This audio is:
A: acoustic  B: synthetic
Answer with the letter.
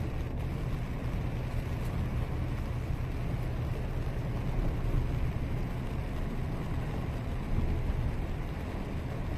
A